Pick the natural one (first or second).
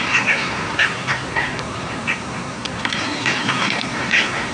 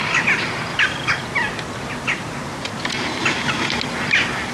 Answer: second